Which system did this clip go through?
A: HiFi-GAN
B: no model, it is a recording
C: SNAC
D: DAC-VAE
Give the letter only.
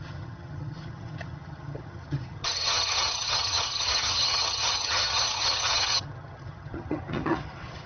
A